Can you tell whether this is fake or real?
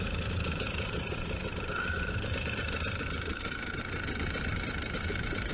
fake